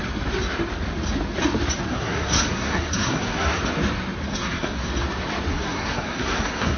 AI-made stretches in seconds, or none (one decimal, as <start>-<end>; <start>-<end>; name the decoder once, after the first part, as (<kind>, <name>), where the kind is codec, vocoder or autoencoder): 1.9-3.6 (codec, SNAC); 4.3-4.9; 5.5-6.8